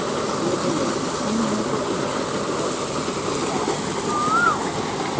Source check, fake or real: real